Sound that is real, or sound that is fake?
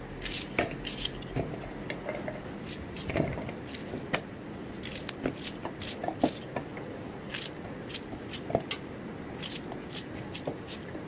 real